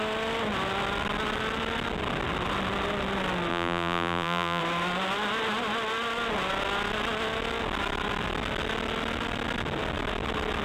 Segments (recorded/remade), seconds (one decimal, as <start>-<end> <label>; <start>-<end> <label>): 0.0-3.5 recorded; 3.5-4.6 remade; 4.6-10.6 recorded